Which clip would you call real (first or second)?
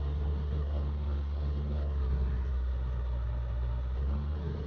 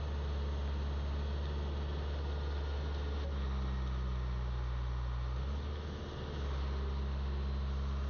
second